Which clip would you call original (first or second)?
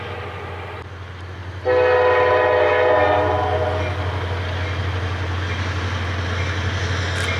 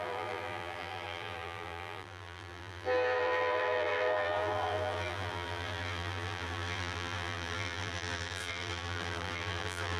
first